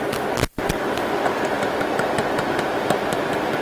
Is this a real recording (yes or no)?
yes